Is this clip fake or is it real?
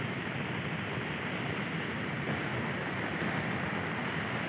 real